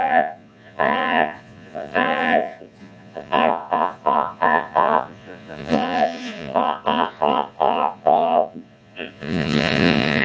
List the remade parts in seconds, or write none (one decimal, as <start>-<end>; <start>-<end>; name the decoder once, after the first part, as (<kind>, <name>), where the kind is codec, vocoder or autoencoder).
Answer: 0.0-10.2 (vocoder, Vocos)